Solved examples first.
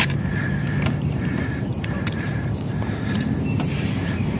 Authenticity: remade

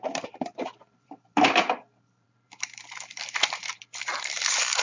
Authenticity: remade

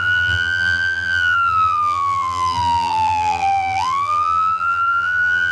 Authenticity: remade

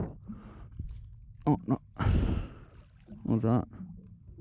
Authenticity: recorded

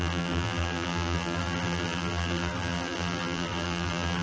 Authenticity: remade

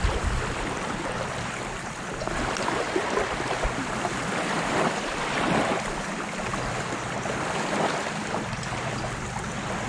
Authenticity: remade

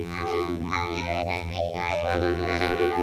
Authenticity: remade